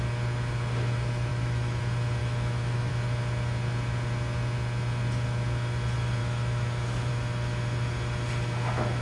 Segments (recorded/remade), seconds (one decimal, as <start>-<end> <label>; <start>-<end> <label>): 0.0-1.3 recorded; 1.3-1.8 remade; 1.8-2.2 recorded; 2.2-2.9 remade; 2.9-6.2 recorded; 6.2-7.1 remade; 7.1-9.0 recorded